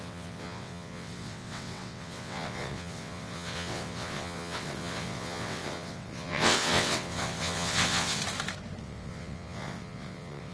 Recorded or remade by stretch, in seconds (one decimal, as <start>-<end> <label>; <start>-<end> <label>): 0.0-8.2 remade; 8.2-8.8 recorded; 8.8-10.5 remade